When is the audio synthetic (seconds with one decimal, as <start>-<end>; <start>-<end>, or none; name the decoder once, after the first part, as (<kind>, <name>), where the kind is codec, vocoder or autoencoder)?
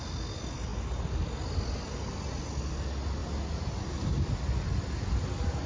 none